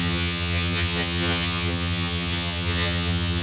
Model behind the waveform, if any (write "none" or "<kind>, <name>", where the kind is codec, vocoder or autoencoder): vocoder, HiFi-GAN